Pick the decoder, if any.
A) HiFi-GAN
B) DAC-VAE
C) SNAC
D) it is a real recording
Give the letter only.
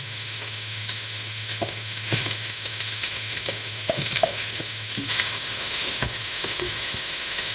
B